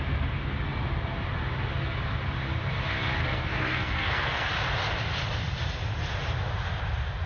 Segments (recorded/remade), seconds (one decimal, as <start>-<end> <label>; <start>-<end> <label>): 0.0-3.2 recorded; 3.2-4.5 remade; 4.5-7.3 recorded